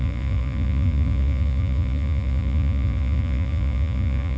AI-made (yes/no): yes